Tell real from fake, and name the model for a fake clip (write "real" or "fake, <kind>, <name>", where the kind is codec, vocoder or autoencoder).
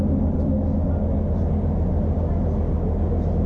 real